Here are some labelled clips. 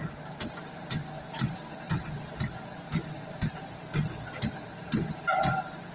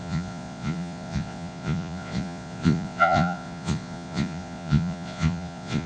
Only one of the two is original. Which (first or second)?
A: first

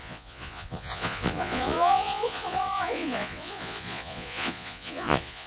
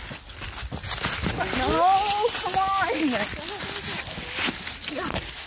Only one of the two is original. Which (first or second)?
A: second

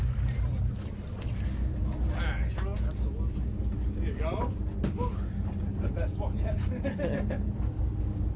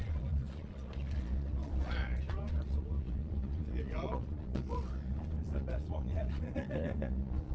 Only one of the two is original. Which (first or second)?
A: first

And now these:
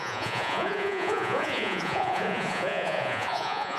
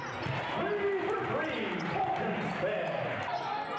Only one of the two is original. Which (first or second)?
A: second